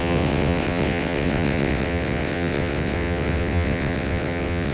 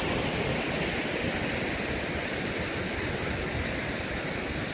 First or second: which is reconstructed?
first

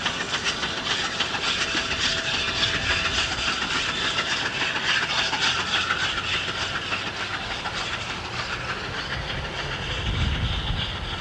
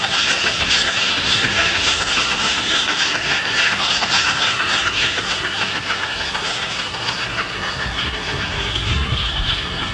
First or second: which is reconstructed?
second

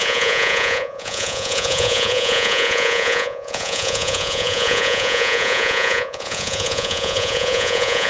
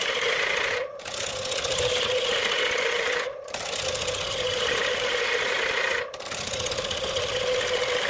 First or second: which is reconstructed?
first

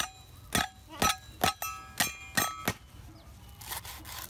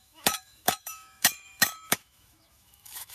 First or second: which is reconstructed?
second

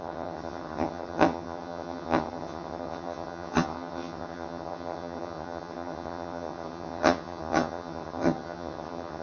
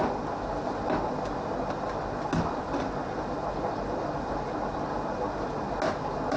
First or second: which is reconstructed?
first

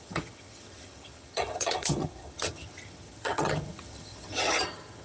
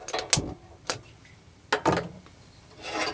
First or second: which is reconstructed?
first